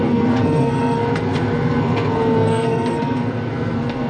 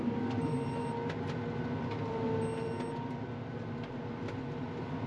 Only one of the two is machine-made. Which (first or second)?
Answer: first